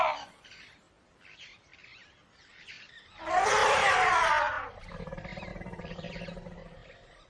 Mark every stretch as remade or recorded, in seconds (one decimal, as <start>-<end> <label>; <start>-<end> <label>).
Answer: 0.0-1.9 recorded; 1.9-6.1 remade; 6.1-7.3 recorded